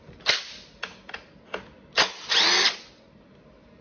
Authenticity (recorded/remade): recorded